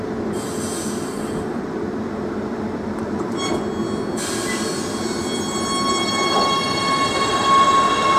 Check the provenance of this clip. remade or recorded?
recorded